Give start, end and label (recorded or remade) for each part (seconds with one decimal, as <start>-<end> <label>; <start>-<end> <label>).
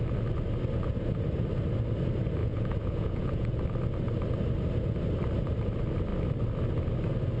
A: 0.0-2.4 recorded; 2.4-3.6 remade; 3.6-7.4 recorded